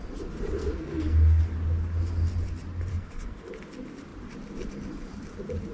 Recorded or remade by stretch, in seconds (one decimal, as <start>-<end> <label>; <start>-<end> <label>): 0.0-0.6 recorded; 0.6-1.4 remade; 1.4-2.9 recorded; 2.9-3.5 remade; 3.5-5.7 recorded

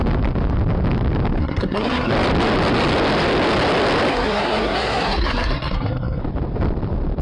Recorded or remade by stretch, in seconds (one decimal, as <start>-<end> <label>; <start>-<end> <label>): 0.0-1.4 recorded; 1.4-2.1 remade; 2.1-4.1 recorded; 4.1-6.2 remade; 6.2-7.2 recorded

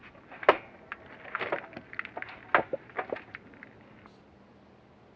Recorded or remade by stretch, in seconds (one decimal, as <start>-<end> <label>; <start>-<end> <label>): 0.0-5.2 recorded

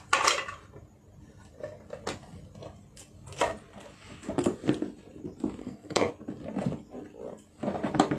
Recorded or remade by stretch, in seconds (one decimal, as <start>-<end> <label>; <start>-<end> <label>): 0.0-5.6 recorded; 5.6-6.1 remade; 6.1-8.2 recorded

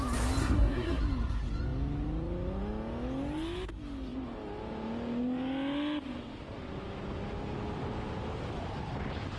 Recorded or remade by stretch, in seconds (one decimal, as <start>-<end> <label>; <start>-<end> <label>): 0.0-0.4 recorded; 0.4-1.0 remade; 1.0-9.4 recorded

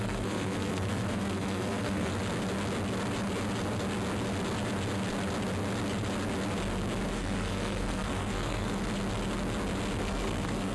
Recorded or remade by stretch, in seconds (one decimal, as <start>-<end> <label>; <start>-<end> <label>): 0.0-2.1 remade; 2.1-7.1 recorded; 7.1-8.8 remade; 8.8-10.0 recorded; 10.0-10.7 remade

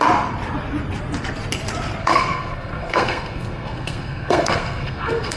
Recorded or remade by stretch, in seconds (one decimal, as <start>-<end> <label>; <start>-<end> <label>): 0.0-2.0 recorded; 2.0-5.4 remade

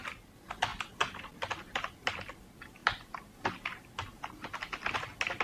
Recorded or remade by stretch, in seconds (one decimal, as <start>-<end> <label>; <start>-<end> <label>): 0.0-5.4 recorded